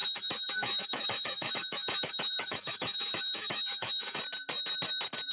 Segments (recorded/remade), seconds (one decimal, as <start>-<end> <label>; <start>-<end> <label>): 0.0-4.2 remade; 4.2-5.3 recorded